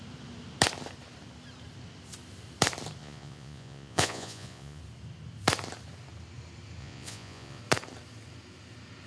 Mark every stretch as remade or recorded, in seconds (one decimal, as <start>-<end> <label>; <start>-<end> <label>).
0.0-3.0 recorded; 3.0-4.8 remade; 4.8-6.8 recorded; 6.8-7.6 remade; 7.6-9.1 recorded